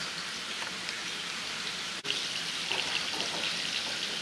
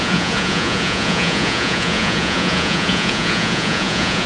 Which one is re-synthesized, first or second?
second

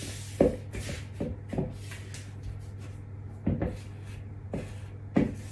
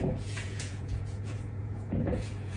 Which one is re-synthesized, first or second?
second